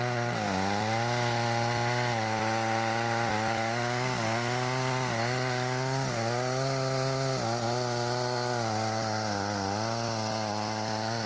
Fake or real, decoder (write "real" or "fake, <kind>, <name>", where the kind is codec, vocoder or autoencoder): real